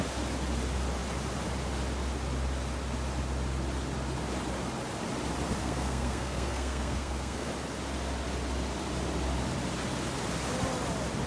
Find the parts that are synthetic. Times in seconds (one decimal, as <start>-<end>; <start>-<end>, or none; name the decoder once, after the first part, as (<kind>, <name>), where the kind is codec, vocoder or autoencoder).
5.6-7.5 (codec, SNAC)